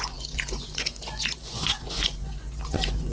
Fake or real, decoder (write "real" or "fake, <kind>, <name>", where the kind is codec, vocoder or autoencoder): fake, vocoder, Vocos